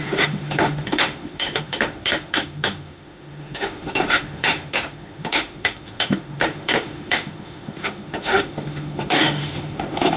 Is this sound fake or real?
fake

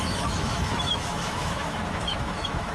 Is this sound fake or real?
fake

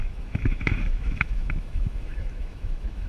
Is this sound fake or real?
fake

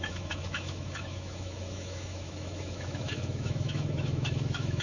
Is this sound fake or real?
fake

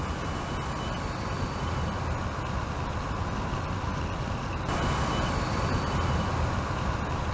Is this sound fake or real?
real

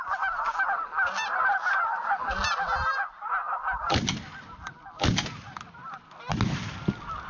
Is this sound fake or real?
real